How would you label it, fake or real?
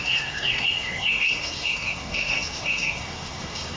fake